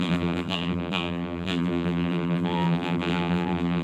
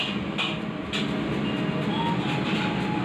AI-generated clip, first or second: first